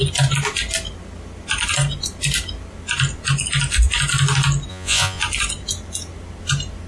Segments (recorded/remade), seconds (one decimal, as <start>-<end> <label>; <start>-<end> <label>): 0.0-4.7 recorded; 4.7-5.2 remade; 5.2-6.9 recorded